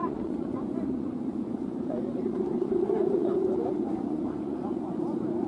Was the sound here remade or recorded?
remade